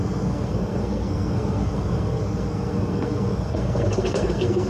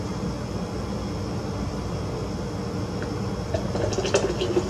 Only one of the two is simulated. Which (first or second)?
first